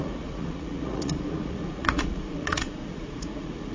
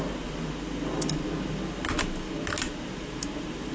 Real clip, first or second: second